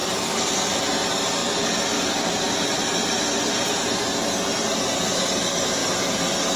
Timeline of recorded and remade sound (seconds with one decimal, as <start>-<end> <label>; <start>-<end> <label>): 0.0-1.4 recorded; 1.4-3.3 remade; 3.3-5.8 recorded; 5.8-6.6 remade

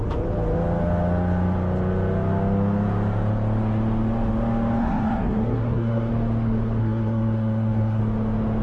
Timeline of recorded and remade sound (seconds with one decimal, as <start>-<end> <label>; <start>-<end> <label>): 0.0-4.8 recorded; 4.8-6.1 remade; 6.1-6.8 recorded; 6.8-8.0 remade; 8.0-8.6 recorded

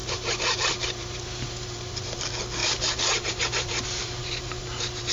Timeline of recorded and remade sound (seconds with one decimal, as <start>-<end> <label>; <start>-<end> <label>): 0.0-2.2 remade; 2.2-2.6 recorded; 2.6-5.1 remade